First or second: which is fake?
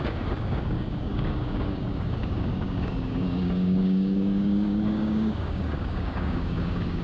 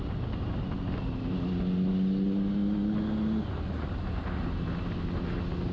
first